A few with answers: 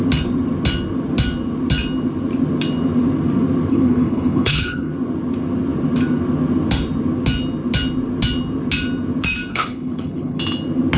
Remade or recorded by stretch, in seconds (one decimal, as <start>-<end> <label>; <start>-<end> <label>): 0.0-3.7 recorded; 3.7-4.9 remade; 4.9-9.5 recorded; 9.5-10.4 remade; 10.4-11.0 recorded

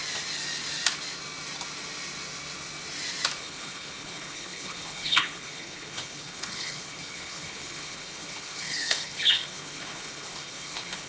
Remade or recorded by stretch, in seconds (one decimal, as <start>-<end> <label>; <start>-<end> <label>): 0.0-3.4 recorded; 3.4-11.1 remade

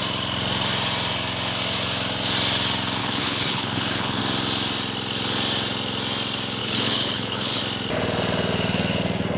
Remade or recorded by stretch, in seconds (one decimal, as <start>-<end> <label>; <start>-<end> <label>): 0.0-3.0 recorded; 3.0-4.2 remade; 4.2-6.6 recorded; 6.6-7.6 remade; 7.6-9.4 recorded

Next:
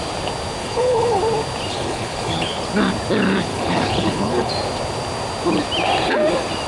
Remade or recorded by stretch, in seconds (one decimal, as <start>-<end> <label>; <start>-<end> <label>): 0.0-0.6 recorded; 0.6-1.2 remade; 1.2-1.7 recorded; 1.7-2.6 remade; 2.6-3.5 recorded; 3.5-4.5 remade; 4.5-6.7 recorded

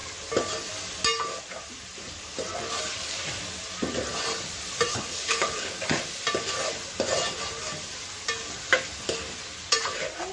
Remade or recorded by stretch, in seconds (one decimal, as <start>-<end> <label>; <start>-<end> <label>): 0.0-4.9 recorded; 4.9-5.7 remade; 5.7-10.3 recorded

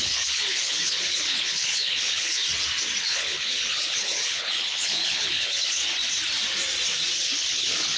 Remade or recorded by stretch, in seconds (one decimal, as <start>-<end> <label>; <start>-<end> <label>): 0.0-2.4 remade; 2.4-3.0 recorded; 3.0-5.8 remade; 5.8-7.5 recorded; 7.5-8.0 remade